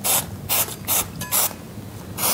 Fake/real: real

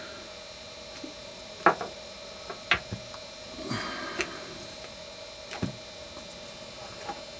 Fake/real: real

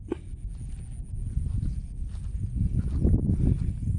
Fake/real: real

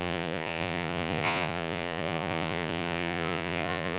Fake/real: fake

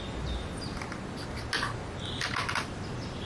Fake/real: real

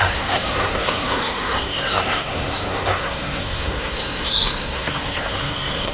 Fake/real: fake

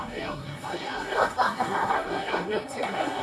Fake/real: fake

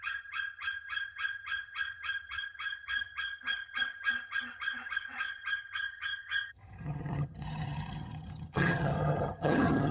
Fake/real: fake